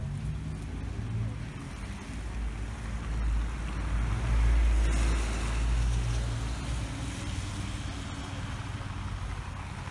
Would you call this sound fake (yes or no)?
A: no